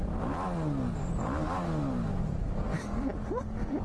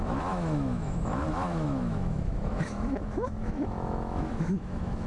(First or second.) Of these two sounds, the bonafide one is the first